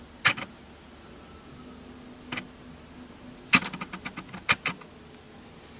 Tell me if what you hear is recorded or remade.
recorded